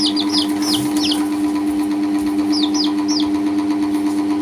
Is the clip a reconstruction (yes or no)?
no